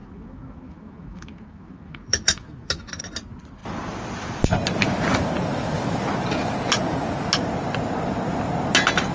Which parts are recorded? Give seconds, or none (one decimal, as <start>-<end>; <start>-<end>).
3.0-9.1